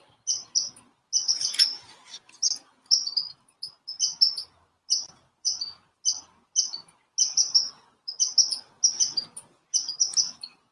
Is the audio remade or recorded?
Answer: recorded